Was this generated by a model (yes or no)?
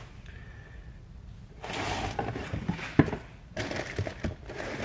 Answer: no